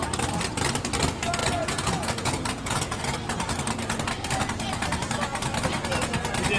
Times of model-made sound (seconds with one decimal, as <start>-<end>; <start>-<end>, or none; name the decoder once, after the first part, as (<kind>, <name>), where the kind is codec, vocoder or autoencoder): 1.4-3.0 (vocoder, Vocos)